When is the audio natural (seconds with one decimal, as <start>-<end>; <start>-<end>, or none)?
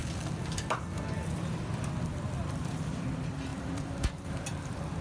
1.9-2.4; 3.1-3.5; 4.6-5.0